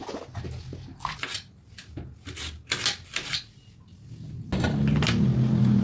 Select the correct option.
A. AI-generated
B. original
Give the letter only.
B